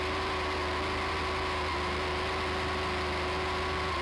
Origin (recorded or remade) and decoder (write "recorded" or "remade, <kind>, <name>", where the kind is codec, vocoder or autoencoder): recorded